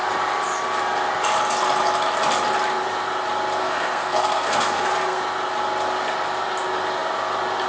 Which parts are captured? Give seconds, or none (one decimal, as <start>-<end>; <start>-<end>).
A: 0.0-3.6; 5.2-7.7